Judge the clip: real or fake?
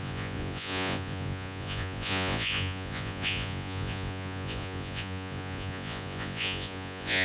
fake